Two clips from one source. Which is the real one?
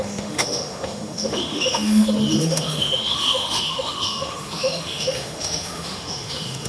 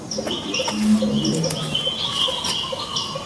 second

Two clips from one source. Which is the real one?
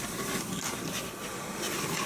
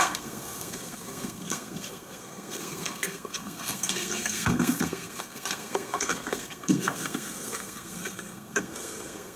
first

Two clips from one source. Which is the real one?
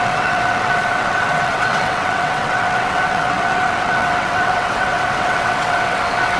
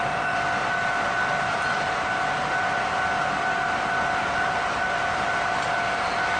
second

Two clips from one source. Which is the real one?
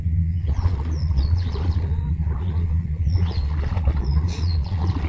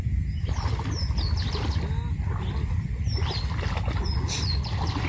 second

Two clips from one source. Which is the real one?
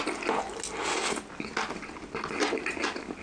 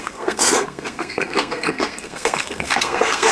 first